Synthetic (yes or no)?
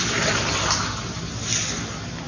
no